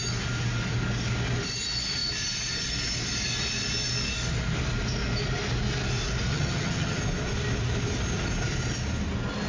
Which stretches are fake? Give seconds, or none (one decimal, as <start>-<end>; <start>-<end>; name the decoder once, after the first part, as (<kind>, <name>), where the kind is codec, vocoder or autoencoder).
6.3-7.0 (vocoder, HiFi-GAN)